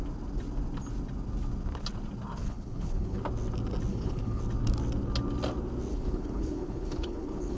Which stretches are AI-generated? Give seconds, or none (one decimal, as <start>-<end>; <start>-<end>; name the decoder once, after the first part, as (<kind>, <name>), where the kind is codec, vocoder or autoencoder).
2.4-3.2 (codec, HILCodec); 3.9-4.4; 5.9-7.6